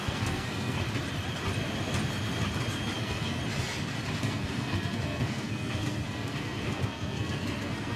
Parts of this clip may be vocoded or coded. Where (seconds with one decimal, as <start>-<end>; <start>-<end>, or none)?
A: 0.0-0.8; 3.0-3.4; 4.2-8.0

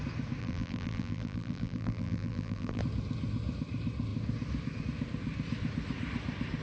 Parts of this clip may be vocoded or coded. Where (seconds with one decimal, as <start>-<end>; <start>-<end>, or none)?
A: 0.4-2.8

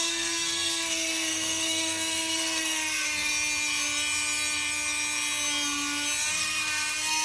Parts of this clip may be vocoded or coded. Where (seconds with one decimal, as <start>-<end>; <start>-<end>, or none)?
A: 0.0-3.3; 6.3-7.2

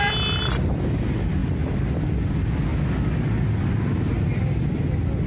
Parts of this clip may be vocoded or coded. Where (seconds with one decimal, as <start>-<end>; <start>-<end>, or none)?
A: none

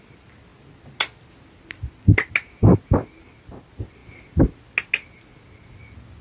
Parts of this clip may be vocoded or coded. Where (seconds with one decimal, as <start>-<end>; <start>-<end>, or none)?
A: none

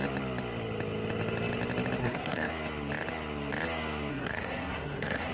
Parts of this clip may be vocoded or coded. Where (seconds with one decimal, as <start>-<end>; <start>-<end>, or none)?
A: 2.0-2.5; 4.1-5.3

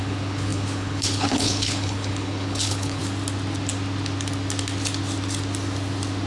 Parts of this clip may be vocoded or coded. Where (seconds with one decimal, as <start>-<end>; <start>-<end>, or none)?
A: 0.0-3.0

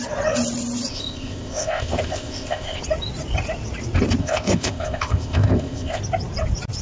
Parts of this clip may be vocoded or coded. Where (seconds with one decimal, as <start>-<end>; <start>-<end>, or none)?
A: 0.9-2.8; 4.2-6.0